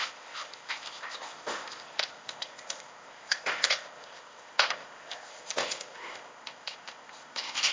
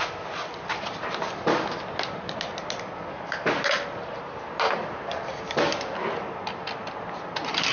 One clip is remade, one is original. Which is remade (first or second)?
first